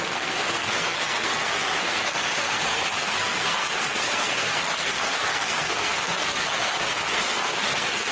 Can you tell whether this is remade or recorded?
remade